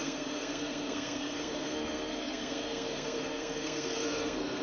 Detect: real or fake fake